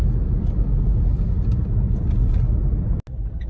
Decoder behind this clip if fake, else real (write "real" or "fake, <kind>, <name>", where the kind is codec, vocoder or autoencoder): real